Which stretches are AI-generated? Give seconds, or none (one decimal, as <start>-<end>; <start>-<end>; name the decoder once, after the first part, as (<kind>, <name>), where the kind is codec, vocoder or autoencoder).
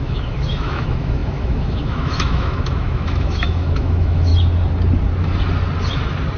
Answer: 0.0-4.3 (autoencoder, DAC-VAE)